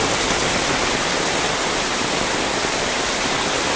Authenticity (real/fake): real